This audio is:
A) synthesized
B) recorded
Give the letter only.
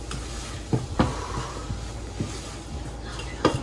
B